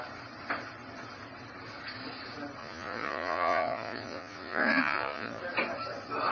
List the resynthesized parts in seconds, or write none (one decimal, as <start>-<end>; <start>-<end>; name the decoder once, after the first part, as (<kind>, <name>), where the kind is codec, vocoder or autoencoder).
2.6-5.4 (vocoder, Vocos)